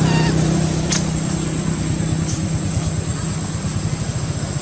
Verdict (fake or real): real